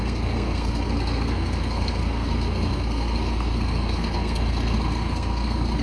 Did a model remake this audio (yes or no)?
yes